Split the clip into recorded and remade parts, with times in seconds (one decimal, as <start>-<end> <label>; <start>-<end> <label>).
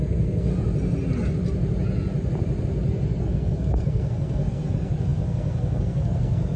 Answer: 0.0-0.5 remade; 0.5-3.2 recorded; 3.2-6.6 remade